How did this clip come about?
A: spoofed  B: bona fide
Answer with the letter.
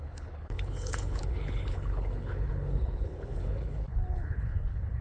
A